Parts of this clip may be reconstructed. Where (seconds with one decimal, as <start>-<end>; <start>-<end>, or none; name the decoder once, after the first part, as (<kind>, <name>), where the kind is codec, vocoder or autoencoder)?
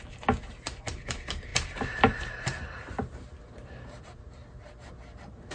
0.0-5.5 (vocoder, BigVGAN v2)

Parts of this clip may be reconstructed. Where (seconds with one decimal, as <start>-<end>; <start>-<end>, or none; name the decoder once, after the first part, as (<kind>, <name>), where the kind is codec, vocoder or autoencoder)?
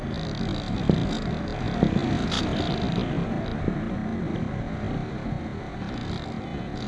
none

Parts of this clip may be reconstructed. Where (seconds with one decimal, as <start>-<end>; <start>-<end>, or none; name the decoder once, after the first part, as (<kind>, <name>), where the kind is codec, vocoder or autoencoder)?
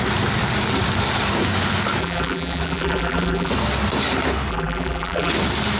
2.0-3.5 (vocoder, BigVGAN v2); 4.5-5.3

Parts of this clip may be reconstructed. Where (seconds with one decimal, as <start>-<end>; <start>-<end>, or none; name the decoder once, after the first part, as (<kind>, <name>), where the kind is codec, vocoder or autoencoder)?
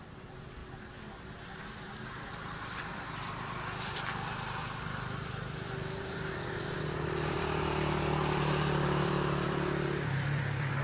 0.0-0.6 (vocoder, BigVGAN v2); 2.8-10.8